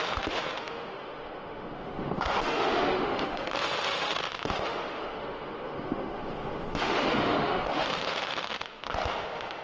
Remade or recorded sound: remade